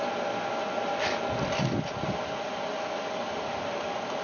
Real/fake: real